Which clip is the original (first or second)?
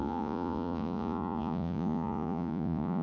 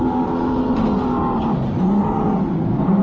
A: second